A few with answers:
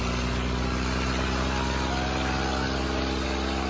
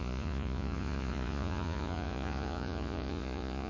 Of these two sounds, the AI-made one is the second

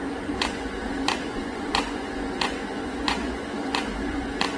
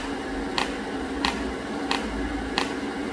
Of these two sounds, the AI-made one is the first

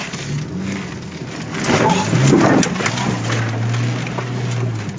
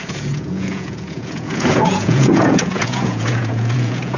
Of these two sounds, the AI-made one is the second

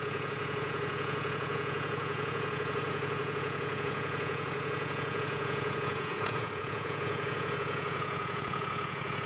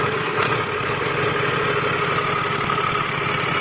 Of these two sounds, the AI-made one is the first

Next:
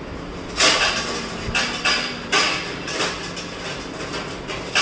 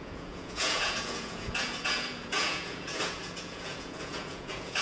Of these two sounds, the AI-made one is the second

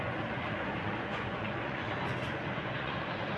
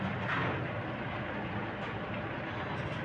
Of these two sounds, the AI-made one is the first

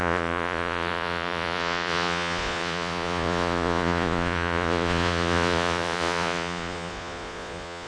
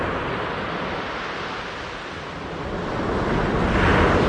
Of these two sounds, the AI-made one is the first